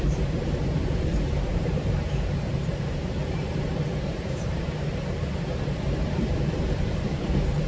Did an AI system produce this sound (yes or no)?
yes